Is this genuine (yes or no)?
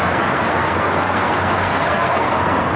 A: no